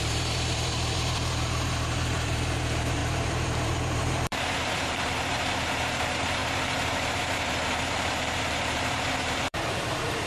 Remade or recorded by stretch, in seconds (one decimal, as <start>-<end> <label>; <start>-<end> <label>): 0.0-10.3 remade